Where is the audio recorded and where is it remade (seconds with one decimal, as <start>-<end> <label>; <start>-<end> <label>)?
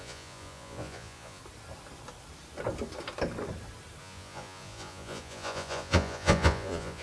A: 0.0-1.4 remade; 1.4-4.0 recorded; 4.0-7.0 remade